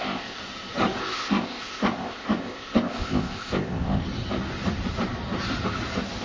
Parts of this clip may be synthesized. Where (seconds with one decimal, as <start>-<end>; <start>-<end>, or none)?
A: 0.0-0.4; 1.0-4.0